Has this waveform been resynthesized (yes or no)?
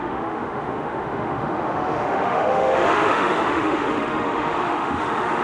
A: yes